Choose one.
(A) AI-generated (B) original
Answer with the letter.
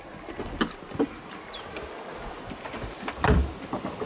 B